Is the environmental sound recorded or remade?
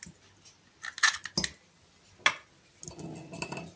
recorded